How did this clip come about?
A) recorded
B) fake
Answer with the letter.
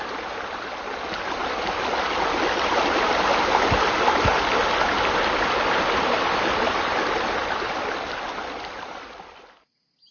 A